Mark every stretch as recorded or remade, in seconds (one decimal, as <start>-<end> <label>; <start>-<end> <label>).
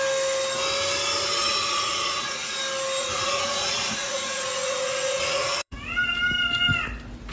0.0-1.4 recorded; 1.4-2.6 remade; 2.6-3.0 recorded; 3.0-5.8 remade; 5.8-7.3 recorded